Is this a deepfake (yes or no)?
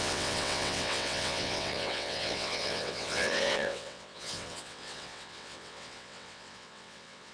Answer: yes